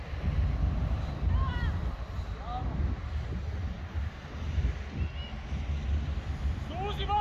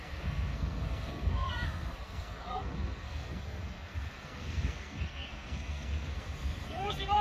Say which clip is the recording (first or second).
first